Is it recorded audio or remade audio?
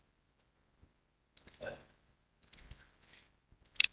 remade